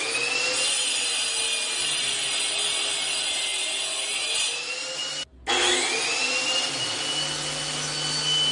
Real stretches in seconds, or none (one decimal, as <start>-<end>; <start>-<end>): 0.0-8.5